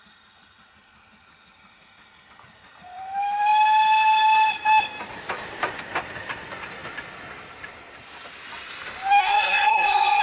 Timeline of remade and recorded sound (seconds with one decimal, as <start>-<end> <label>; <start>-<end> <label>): 0.0-9.2 recorded; 9.2-10.2 remade